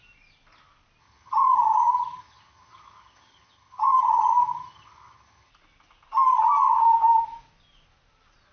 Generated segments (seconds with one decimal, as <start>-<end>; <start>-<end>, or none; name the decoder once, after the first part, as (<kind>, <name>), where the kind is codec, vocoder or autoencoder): 1.0-5.5 (vocoder, HiFi-GAN)